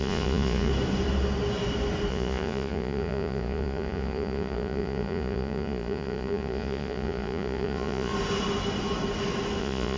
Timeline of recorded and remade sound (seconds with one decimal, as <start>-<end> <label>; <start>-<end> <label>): 0.0-0.7 remade; 0.7-2.1 recorded; 2.1-8.1 remade; 8.1-9.6 recorded; 9.6-10.0 remade